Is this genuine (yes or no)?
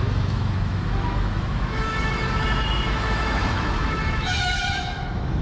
no